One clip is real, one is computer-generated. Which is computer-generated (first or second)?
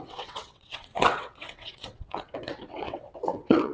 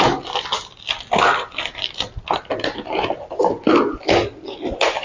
first